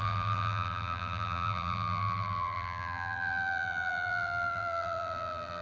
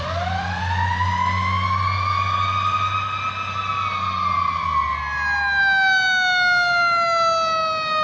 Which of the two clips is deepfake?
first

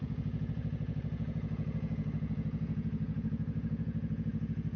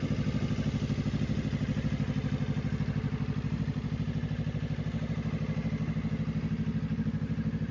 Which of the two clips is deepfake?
first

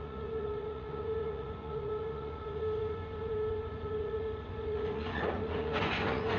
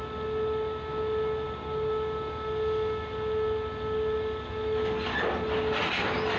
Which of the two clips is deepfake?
first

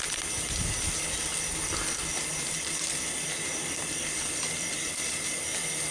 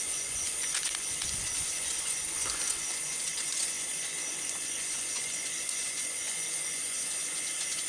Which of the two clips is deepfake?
second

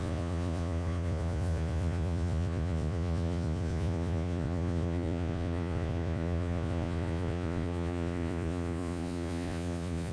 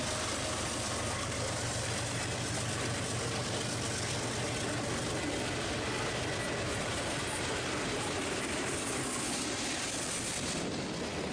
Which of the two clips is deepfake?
first